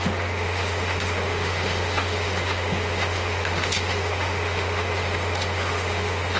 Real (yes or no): no